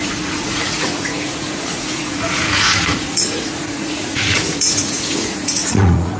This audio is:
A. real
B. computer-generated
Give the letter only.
B